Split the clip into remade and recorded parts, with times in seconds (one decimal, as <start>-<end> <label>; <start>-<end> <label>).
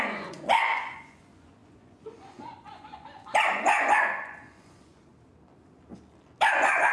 0.0-5.1 remade; 5.1-6.5 recorded; 6.5-6.9 remade